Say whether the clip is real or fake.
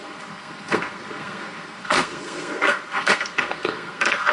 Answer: fake